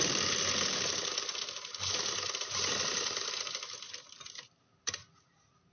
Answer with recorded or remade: recorded